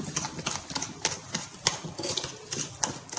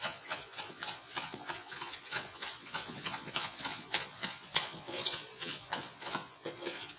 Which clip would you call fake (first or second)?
second